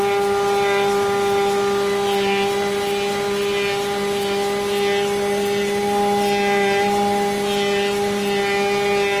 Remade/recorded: recorded